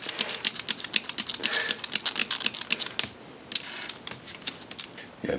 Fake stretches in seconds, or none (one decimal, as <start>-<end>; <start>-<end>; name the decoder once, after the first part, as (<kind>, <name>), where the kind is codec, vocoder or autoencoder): none